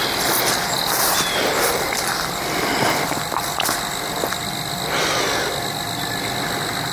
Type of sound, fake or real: real